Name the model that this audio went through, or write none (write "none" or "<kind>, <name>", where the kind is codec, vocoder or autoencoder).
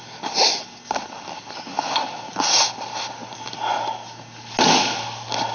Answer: none